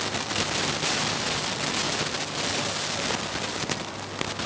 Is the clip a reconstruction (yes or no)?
no